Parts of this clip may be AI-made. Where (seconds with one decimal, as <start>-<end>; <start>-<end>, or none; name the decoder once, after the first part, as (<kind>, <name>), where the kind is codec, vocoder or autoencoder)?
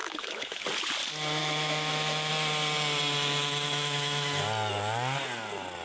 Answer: 0.0-0.6 (autoencoder, DAC-VAE); 1.4-2.3; 3.4-4.4